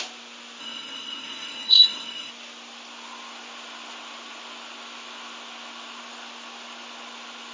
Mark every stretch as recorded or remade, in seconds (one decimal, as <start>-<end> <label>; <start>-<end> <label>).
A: 0.0-0.6 recorded; 0.6-2.3 remade; 2.3-7.5 recorded